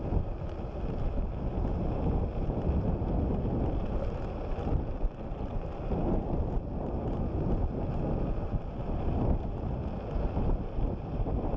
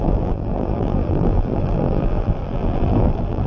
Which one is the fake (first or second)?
second